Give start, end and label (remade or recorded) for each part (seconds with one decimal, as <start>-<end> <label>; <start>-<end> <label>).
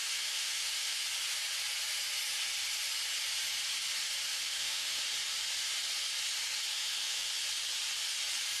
0.0-1.0 remade; 1.0-4.3 recorded; 4.3-5.0 remade; 5.0-6.7 recorded; 6.7-7.3 remade; 7.3-8.6 recorded